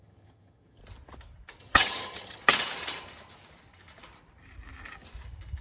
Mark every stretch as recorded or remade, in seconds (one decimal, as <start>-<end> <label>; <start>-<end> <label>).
0.0-0.8 remade; 0.8-1.6 recorded; 1.6-2.4 remade; 2.4-5.6 recorded